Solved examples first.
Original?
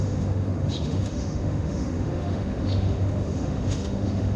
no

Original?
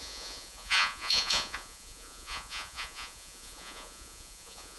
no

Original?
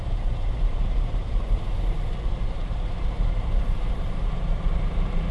no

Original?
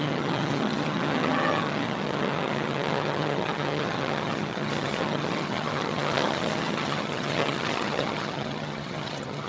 no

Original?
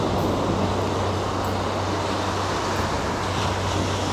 yes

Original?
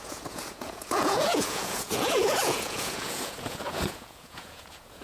no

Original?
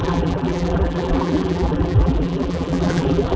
no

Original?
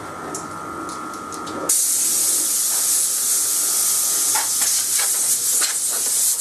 yes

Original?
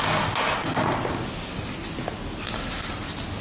yes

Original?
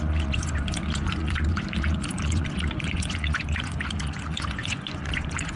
no